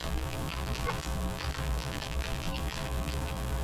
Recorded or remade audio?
remade